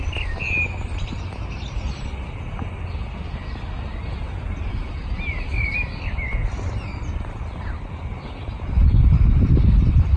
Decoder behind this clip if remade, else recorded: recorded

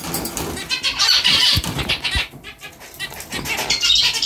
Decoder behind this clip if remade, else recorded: remade, vocoder, BigVGAN v2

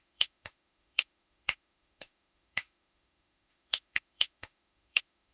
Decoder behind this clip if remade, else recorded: remade, autoencoder, DAC-VAE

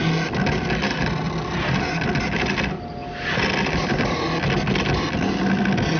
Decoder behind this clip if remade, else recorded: recorded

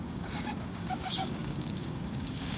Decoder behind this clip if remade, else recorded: remade, codec, DAC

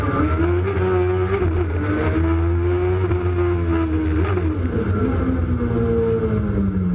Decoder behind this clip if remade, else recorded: recorded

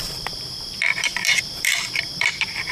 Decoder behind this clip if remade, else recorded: remade, vocoder, BigVGAN v2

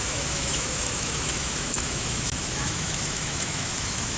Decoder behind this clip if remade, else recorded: remade, autoencoder, DAC-VAE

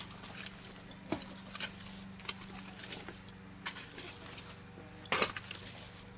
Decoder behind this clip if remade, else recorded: recorded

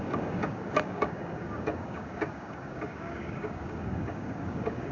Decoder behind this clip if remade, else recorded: remade, codec, DAC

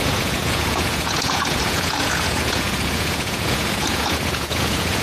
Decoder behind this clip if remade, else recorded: remade, vocoder, Vocos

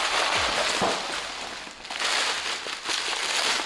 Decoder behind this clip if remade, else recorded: recorded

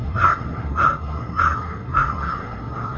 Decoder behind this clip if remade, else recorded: remade, codec, SNAC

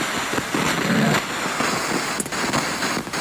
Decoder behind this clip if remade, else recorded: recorded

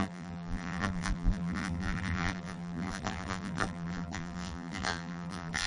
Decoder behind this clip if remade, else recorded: remade, vocoder, BigVGAN v2